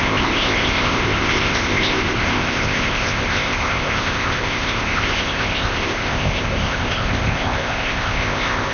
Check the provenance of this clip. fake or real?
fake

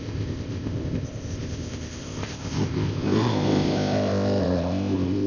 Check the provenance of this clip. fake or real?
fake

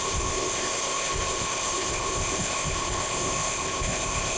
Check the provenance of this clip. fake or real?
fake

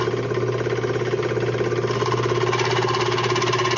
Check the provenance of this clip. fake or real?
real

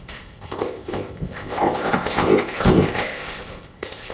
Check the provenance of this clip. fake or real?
fake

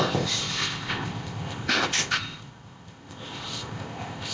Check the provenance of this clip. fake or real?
fake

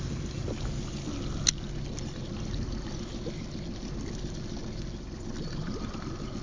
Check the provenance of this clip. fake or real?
real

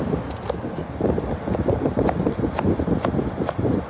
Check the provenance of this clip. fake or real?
real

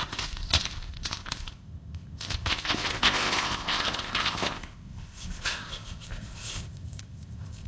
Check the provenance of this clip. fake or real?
fake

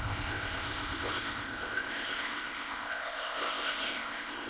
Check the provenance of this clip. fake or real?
fake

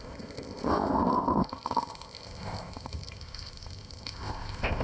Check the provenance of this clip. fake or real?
fake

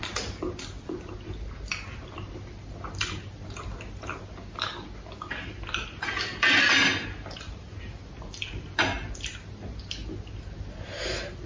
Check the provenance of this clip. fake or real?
real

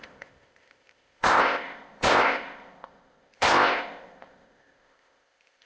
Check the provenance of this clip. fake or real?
fake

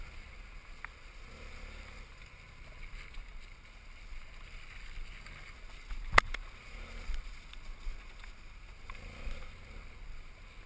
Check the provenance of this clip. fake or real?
real